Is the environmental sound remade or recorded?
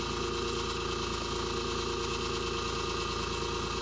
recorded